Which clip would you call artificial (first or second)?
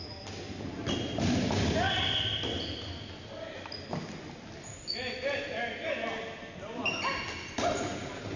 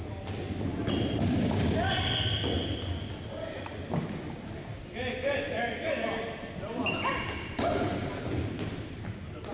second